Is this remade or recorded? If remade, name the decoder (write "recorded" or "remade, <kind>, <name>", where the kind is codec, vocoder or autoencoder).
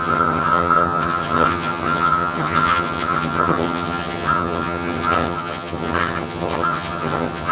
remade, vocoder, HiFi-GAN